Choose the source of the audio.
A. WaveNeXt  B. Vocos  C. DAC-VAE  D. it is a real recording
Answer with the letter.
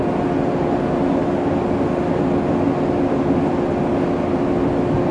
D